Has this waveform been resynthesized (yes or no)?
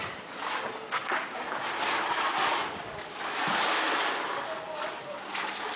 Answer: no